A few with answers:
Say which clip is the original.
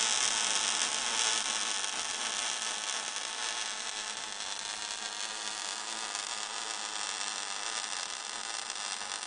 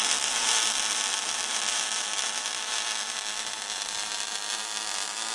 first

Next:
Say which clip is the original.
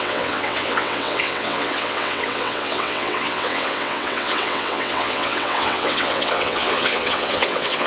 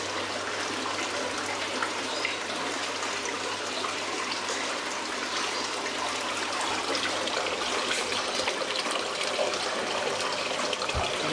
second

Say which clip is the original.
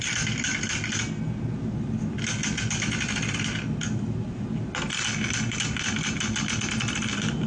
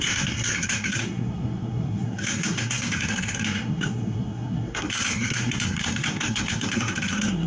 first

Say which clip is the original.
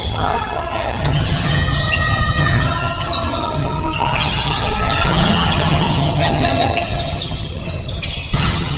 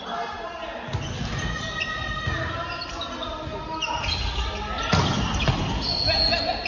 second